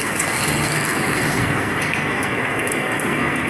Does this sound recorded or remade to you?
remade